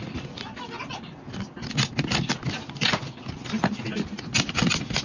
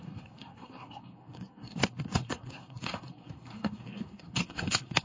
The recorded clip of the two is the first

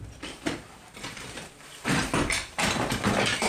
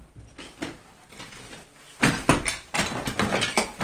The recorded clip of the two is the second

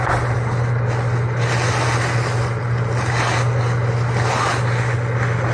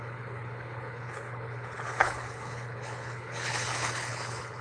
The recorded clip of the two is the first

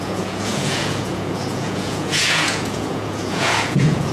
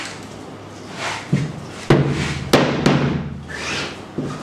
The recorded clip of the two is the second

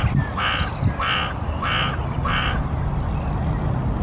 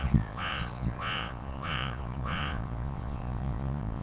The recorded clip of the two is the first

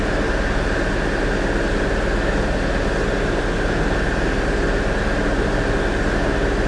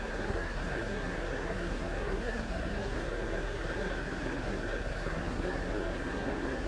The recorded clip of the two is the first